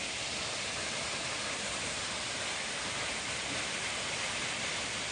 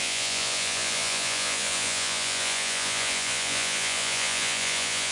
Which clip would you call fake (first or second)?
second